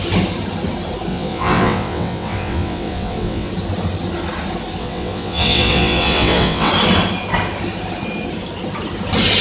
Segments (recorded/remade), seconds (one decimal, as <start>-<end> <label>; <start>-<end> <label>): 0.0-1.1 recorded; 1.1-3.5 remade; 3.5-4.8 recorded; 4.8-6.7 remade; 6.7-9.4 recorded